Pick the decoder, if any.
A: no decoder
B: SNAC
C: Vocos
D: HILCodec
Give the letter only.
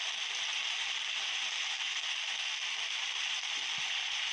A